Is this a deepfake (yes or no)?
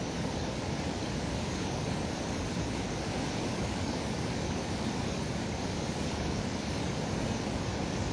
yes